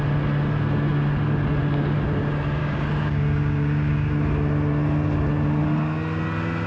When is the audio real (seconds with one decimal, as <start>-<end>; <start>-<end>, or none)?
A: 0.0-2.6; 4.1-6.7